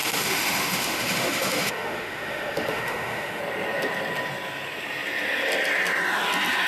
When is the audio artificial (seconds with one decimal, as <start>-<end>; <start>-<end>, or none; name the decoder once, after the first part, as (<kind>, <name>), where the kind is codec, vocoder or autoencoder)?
0.0-3.4 (autoencoder, DAC-VAE)